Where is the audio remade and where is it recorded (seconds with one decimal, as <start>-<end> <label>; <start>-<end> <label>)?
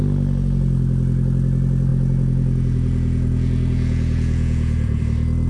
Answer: 0.0-1.9 recorded; 1.9-5.0 remade; 5.0-5.5 recorded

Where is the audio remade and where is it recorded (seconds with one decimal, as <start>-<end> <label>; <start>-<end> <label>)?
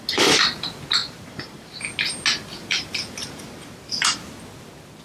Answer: 0.0-1.0 recorded; 1.0-1.8 remade; 1.8-2.6 recorded; 2.6-3.4 remade; 3.4-5.0 recorded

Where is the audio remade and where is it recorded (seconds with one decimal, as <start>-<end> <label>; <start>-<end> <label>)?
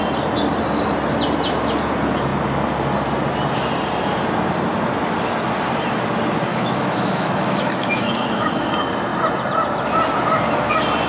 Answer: 0.0-6.5 recorded; 6.5-8.7 remade; 8.7-11.1 recorded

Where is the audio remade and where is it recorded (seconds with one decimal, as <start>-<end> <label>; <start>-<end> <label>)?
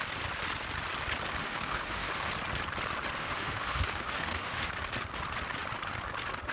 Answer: 0.0-1.4 recorded; 1.4-2.3 remade; 2.3-3.2 recorded; 3.2-4.7 remade; 4.7-6.5 recorded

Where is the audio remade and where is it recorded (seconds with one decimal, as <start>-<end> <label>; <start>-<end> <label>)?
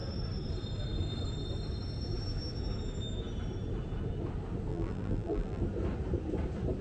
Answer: 0.0-4.7 recorded; 4.7-5.6 remade; 5.6-6.8 recorded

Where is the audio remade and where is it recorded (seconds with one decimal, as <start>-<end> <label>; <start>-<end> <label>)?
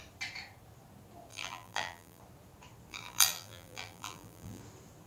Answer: 0.0-1.3 recorded; 1.3-2.2 remade; 2.2-2.9 recorded; 2.9-4.6 remade; 4.6-5.1 recorded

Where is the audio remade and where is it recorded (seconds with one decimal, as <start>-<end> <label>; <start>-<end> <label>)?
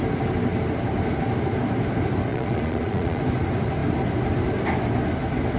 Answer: 0.0-2.3 recorded; 2.3-3.2 remade; 3.2-5.6 recorded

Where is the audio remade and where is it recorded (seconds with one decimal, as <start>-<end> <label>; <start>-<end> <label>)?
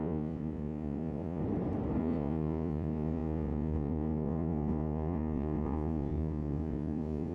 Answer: 0.0-1.4 remade; 1.4-2.0 recorded; 2.0-7.3 remade